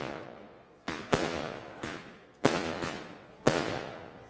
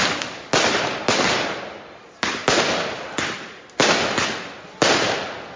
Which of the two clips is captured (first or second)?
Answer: second